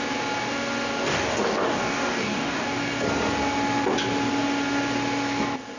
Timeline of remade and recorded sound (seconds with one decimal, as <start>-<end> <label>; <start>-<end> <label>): 0.0-0.9 recorded; 0.9-2.8 remade; 2.8-5.8 recorded